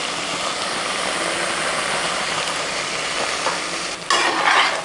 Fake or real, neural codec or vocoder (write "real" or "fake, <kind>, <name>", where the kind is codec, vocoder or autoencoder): real